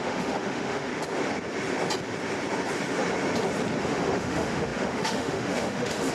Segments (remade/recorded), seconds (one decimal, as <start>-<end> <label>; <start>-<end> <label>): 0.0-0.9 remade; 0.9-3.8 recorded; 3.8-6.1 remade

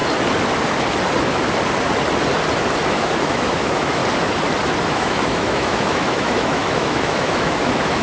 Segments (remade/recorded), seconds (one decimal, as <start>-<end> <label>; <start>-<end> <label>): 0.0-2.9 recorded; 2.9-4.0 remade; 4.0-4.9 recorded; 4.9-8.0 remade

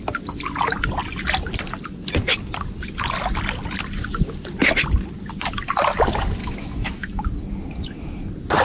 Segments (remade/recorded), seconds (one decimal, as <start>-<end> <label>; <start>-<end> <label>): 0.0-6.4 recorded; 6.4-7.2 remade; 7.2-8.6 recorded

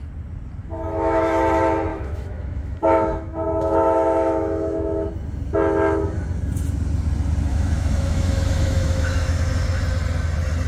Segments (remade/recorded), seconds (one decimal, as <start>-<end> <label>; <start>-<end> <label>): 0.0-0.6 recorded; 0.6-1.4 remade; 1.4-1.9 recorded; 1.9-5.1 remade; 5.1-7.5 recorded; 7.5-9.4 remade; 9.4-10.7 recorded

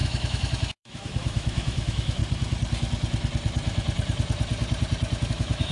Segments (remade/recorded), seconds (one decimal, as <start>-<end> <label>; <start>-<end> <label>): 0.0-2.2 remade; 2.2-5.3 recorded; 5.3-5.7 remade

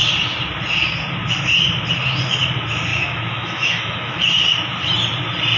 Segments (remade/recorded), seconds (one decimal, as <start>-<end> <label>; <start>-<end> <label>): 0.0-2.9 recorded; 2.9-4.2 remade; 4.2-5.6 recorded

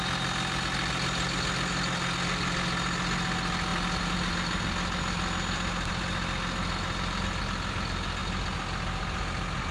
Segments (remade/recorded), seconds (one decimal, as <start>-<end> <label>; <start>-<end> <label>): 0.0-9.7 recorded

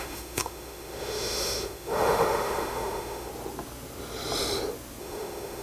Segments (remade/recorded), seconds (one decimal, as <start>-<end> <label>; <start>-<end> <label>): 0.0-3.3 remade; 3.3-5.0 recorded; 5.0-5.6 remade